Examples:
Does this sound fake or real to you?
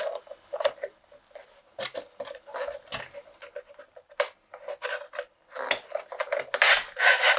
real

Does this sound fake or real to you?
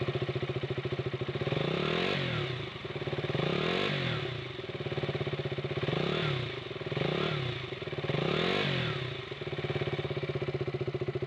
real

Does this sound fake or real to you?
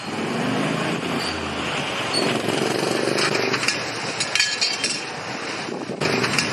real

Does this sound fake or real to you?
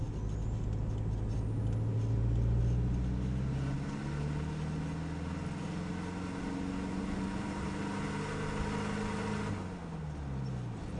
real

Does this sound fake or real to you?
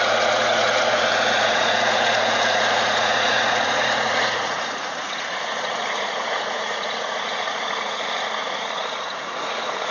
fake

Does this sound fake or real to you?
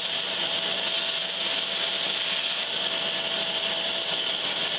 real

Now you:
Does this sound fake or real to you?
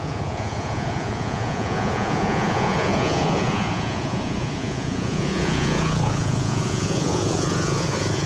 fake